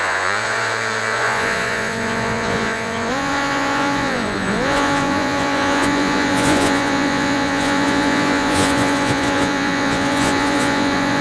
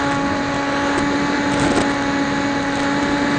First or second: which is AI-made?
first